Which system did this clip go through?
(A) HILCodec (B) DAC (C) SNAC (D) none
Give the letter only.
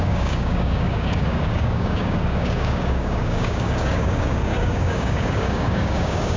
B